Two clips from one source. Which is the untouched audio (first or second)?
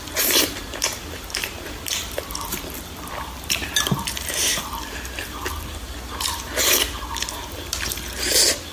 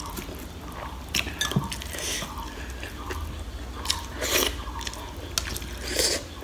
second